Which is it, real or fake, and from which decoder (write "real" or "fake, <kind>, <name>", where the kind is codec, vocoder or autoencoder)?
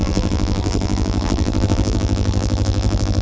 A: fake, vocoder, BigVGAN v2